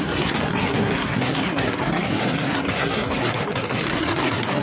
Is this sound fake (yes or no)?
yes